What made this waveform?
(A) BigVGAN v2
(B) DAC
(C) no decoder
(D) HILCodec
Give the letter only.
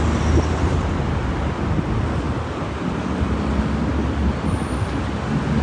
C